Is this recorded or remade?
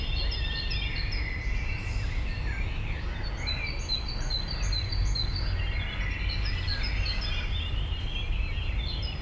recorded